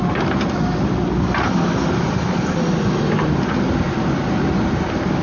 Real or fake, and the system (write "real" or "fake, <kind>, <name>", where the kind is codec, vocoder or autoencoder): real